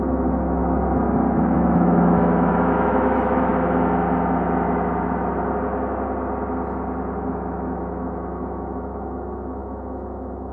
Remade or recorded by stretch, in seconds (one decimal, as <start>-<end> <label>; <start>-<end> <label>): 0.0-0.6 remade; 0.6-1.4 recorded; 1.4-3.5 remade; 3.5-7.3 recorded; 7.3-10.5 remade